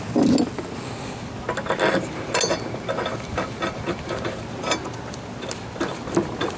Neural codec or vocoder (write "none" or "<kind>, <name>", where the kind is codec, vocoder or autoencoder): none